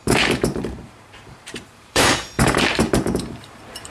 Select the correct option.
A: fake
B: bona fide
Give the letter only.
A